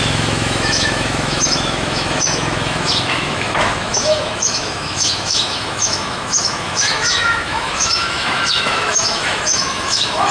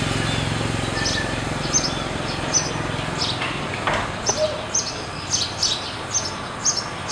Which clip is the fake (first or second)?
first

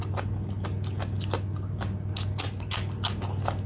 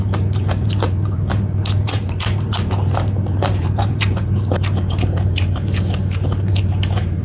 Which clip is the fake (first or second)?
second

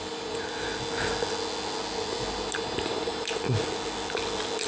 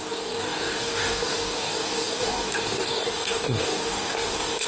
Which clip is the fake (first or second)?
second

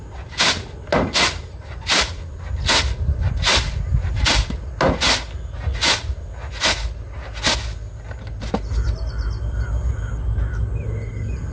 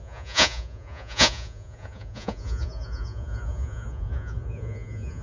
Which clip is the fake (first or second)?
second